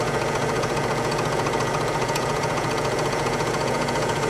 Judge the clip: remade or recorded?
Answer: remade